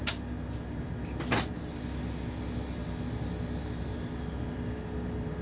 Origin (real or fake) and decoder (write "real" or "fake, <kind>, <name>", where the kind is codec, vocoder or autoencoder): real